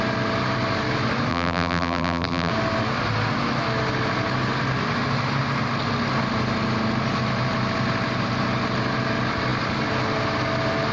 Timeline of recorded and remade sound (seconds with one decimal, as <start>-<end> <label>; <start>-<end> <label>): 0.0-1.3 recorded; 1.3-2.5 remade; 2.5-10.9 recorded